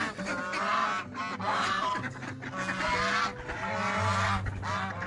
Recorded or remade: recorded